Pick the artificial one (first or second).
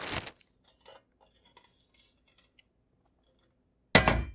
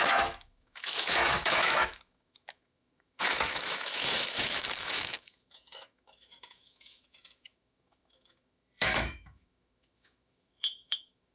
second